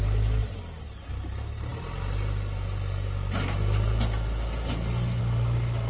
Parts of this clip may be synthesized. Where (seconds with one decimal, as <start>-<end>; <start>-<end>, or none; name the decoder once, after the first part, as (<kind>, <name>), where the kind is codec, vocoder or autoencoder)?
none